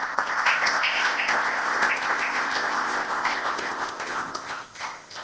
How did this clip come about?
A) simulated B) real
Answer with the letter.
A